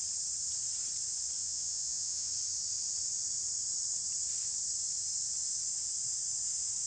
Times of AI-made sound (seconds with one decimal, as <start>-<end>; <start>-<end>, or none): 1.4-2.3

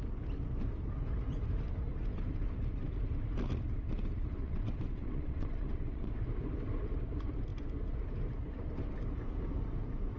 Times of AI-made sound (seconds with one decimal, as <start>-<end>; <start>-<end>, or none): 4.4-6.1